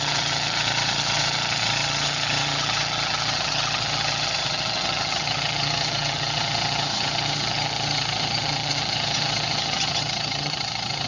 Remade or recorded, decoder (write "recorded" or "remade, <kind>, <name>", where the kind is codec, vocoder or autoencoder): remade, vocoder, HiFi-GAN